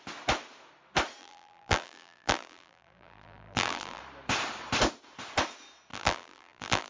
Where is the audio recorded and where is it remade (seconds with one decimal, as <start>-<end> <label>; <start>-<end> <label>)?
0.0-1.2 recorded; 1.2-4.0 remade; 4.0-5.9 recorded; 5.9-6.9 remade